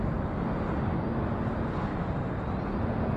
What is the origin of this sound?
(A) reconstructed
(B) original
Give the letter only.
B